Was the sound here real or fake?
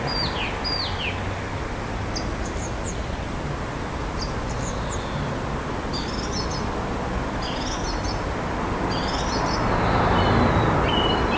real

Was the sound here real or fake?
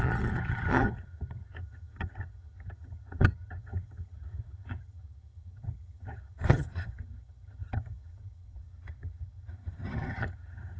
fake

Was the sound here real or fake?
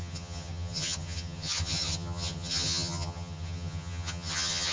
fake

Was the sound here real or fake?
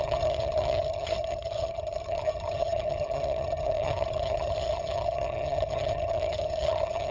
fake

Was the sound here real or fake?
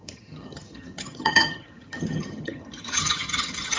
fake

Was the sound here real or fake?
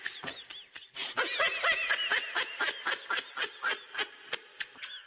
real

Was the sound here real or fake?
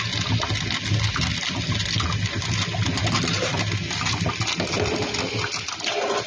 real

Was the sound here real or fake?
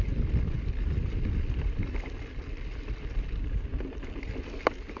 real